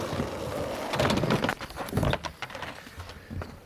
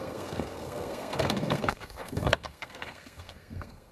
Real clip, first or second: first